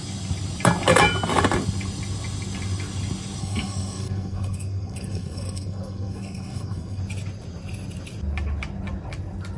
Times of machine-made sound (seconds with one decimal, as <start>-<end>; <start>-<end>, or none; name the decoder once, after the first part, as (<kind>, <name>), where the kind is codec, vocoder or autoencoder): 3.4-7.0 (codec, SNAC)